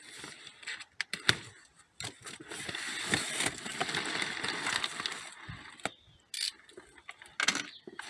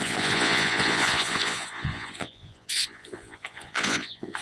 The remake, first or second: second